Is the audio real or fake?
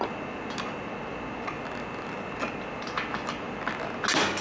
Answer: real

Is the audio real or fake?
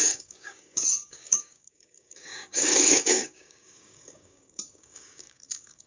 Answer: fake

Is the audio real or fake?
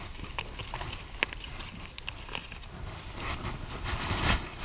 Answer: real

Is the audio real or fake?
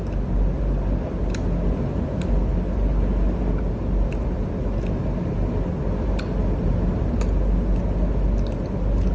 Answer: real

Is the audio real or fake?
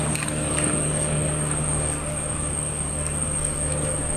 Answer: fake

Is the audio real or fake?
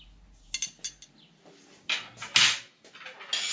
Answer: real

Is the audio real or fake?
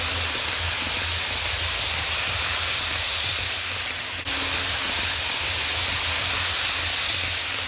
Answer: real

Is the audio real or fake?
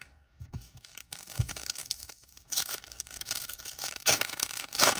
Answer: fake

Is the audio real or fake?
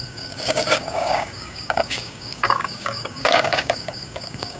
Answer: fake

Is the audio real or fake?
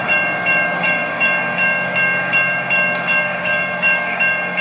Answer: fake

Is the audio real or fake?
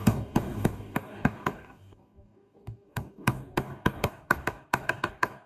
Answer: fake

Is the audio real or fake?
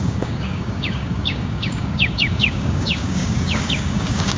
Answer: fake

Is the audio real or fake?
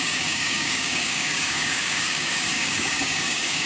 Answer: fake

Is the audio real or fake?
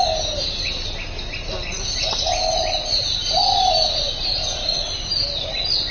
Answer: real